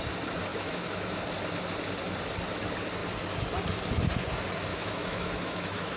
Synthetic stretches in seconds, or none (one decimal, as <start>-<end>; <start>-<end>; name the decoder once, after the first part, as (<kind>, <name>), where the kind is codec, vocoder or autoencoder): 0.5-1.2 (autoencoder, DAC-VAE); 4.7-6.0